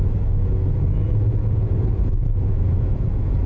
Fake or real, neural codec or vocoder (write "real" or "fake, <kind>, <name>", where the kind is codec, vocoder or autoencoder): fake, vocoder, Vocos